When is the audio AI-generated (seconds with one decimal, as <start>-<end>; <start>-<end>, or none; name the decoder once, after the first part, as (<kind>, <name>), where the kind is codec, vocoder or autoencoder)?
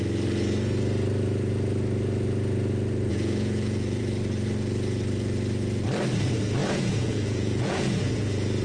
3.1-4.0 (vocoder, Vocos); 6.6-8.1